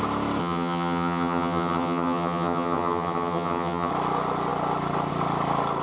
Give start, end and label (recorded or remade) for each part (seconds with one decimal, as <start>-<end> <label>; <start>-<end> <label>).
0.0-0.4 recorded; 0.4-3.9 remade; 3.9-5.8 recorded